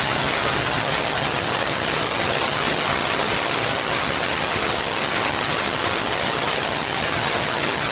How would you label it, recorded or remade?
remade